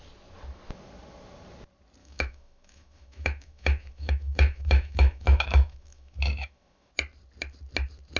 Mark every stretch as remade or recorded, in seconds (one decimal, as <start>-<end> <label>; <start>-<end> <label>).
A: 0.0-2.0 recorded; 2.0-6.9 remade; 6.9-8.2 recorded